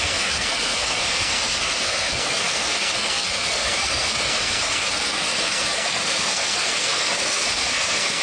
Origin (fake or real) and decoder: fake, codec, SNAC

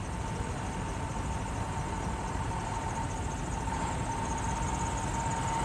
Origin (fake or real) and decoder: real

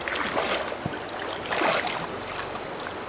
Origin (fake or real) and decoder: real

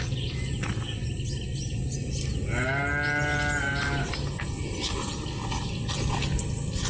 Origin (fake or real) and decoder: real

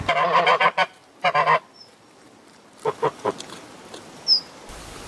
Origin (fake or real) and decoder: real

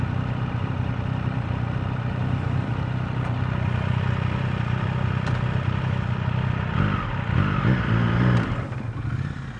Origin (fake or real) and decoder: real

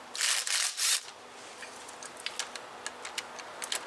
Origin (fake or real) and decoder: real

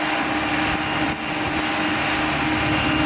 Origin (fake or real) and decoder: real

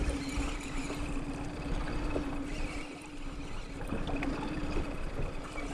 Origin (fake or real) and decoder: real